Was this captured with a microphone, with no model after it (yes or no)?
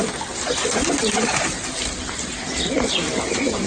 no